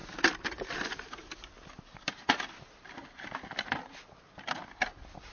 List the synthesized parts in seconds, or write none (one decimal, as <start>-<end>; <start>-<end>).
none